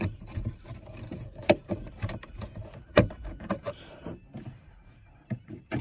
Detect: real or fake fake